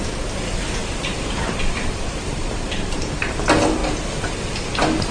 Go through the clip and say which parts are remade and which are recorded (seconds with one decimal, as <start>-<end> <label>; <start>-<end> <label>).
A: 0.0-0.8 recorded; 0.8-3.4 remade; 3.4-5.1 recorded